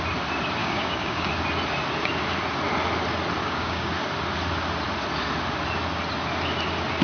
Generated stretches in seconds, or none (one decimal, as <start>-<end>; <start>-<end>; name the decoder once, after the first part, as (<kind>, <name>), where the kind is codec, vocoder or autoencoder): 0.6-1.3 (codec, DAC); 3.4-3.9